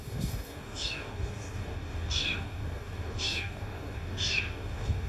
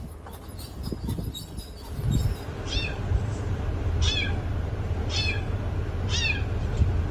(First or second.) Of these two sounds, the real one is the second